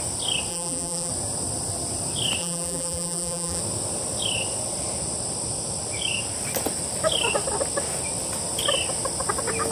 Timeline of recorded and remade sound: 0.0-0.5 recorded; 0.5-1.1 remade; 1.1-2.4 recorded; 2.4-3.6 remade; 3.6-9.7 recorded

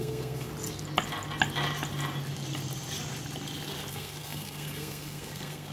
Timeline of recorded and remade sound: 0.0-0.5 remade; 0.5-3.9 recorded; 3.9-5.7 remade

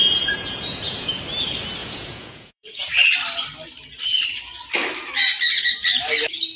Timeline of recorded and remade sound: 0.0-1.1 remade; 1.1-1.8 recorded; 1.8-2.8 remade; 2.8-6.6 recorded

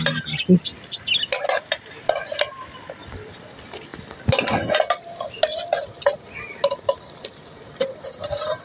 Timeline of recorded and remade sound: 0.0-8.6 recorded